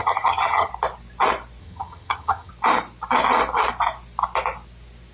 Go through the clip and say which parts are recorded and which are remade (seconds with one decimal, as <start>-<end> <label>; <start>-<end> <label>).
0.0-0.7 remade; 0.7-1.6 recorded; 1.6-2.5 remade; 2.5-5.1 recorded